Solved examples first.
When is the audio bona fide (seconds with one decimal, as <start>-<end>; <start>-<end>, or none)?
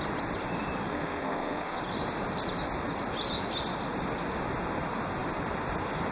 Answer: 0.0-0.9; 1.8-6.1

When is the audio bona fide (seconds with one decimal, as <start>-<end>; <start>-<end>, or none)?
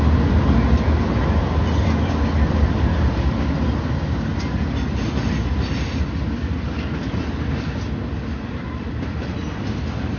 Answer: 0.0-10.2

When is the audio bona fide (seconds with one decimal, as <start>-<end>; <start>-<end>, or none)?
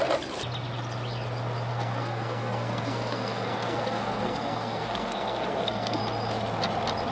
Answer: 0.0-1.7; 6.0-7.1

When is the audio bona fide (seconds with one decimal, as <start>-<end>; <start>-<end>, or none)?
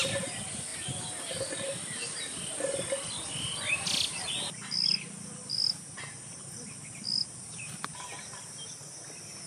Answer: 0.0-9.5